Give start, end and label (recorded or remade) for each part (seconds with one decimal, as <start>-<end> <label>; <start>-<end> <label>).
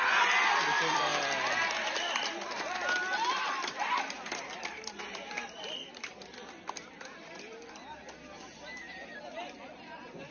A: 0.0-10.3 remade